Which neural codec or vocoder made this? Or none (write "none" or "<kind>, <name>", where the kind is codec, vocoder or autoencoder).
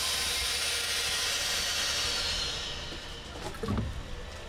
none